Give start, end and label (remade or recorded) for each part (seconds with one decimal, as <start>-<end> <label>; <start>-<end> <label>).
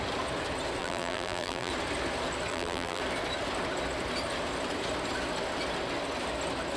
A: 0.0-0.8 recorded; 0.8-1.7 remade; 1.7-2.5 recorded; 2.5-3.0 remade; 3.0-6.8 recorded